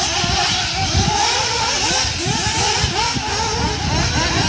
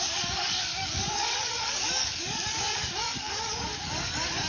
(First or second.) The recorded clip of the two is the first